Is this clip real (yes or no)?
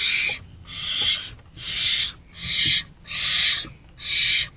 yes